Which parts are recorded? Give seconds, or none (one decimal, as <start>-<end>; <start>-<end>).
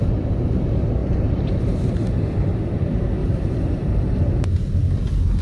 0.0-1.0; 2.4-3.2; 4.2-5.4